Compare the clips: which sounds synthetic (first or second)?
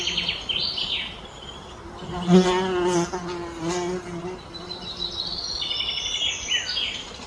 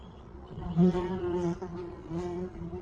second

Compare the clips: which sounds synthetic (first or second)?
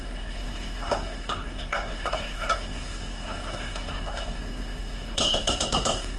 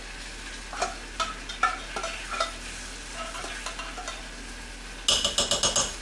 first